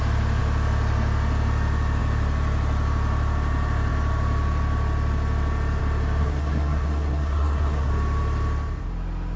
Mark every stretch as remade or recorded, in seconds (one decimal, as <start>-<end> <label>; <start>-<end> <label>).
0.0-6.2 recorded; 6.2-7.9 remade; 7.9-9.4 recorded